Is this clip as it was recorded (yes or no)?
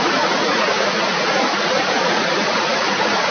no